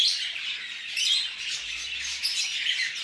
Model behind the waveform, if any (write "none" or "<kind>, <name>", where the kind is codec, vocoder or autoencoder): none